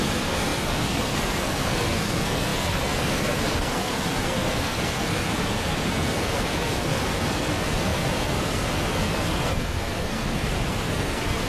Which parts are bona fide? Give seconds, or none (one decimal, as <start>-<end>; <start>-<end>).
none